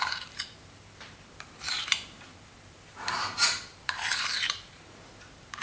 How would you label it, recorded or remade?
remade